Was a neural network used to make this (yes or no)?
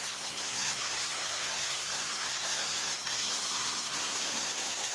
yes